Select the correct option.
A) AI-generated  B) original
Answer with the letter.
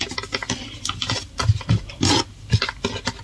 B